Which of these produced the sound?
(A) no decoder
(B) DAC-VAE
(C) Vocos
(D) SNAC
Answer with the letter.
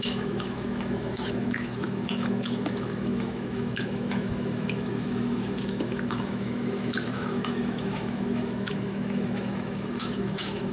B